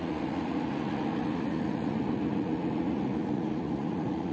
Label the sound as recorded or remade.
remade